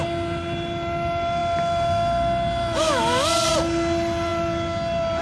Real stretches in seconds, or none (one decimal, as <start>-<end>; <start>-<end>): 0.0-5.2